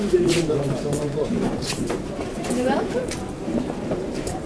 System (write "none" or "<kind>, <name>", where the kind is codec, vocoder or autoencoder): vocoder, BigVGAN v2